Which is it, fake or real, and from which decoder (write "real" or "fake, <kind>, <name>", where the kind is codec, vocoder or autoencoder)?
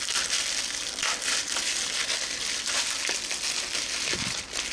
real